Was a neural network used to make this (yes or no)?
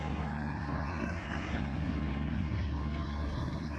yes